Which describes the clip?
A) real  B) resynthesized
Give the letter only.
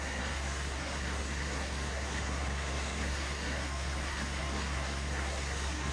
B